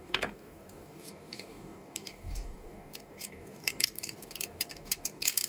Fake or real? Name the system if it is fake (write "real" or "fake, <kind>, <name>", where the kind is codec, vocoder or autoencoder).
fake, codec, DAC